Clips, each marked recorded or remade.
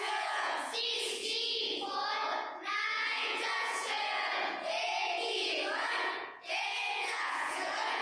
remade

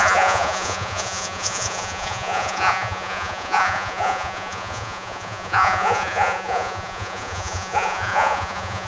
remade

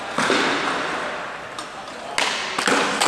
recorded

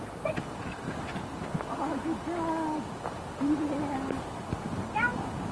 recorded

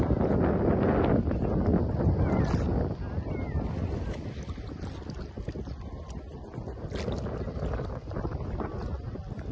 recorded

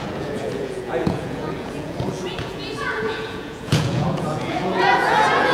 remade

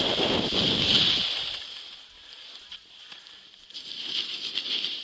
recorded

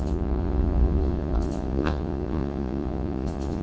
remade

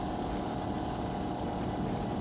recorded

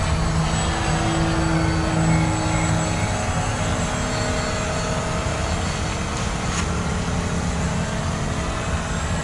recorded